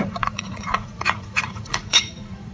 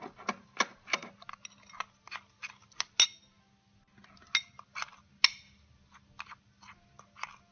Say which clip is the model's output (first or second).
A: first